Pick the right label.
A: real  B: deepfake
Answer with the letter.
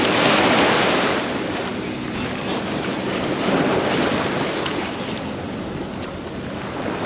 A